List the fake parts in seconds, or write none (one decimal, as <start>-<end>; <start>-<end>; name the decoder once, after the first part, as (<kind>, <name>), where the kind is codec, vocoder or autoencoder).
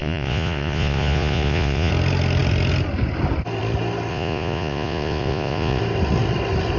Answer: 0.0-1.9 (vocoder, Vocos); 4.1-5.8